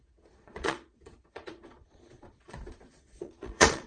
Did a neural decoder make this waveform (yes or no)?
yes